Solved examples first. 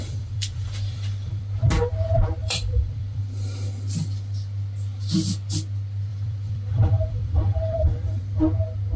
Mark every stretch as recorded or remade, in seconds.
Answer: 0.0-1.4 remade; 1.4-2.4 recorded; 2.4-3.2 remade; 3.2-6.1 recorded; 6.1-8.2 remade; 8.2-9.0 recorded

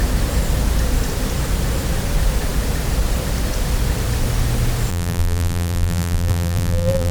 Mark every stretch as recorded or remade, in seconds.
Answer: 0.0-4.9 recorded; 4.9-7.1 remade

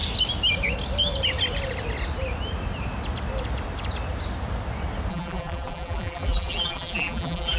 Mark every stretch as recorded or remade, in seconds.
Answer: 0.0-5.1 recorded; 5.1-7.6 remade